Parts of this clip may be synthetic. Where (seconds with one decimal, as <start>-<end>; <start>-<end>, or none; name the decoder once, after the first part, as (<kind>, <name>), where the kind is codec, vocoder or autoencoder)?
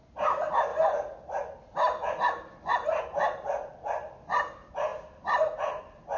none